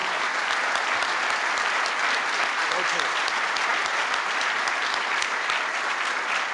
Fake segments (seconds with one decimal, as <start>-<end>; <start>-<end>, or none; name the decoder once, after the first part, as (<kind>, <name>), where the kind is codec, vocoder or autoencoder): none